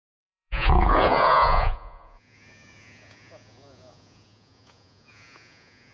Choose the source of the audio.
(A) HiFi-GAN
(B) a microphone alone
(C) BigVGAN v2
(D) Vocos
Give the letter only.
D